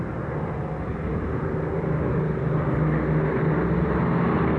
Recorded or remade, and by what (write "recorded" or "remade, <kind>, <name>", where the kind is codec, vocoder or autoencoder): recorded